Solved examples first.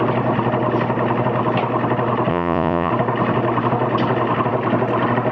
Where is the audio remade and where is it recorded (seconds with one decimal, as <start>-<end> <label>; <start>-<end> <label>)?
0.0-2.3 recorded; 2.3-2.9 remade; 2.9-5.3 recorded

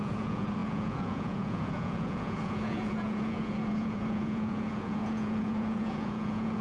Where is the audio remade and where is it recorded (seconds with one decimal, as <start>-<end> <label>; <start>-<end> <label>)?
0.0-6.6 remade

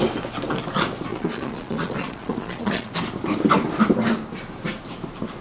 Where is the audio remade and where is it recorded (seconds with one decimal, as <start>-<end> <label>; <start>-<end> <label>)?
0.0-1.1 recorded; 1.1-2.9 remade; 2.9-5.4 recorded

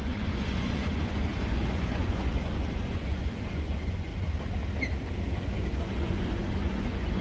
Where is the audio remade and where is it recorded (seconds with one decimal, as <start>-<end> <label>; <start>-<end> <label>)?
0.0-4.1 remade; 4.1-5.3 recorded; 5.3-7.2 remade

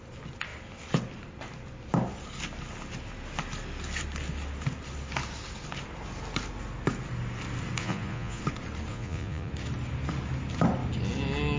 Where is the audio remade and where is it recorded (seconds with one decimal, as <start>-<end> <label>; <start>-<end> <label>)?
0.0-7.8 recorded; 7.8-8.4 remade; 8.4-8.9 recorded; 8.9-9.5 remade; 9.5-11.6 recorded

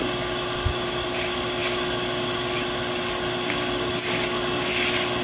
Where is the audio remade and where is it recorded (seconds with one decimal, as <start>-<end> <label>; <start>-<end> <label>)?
0.0-5.2 recorded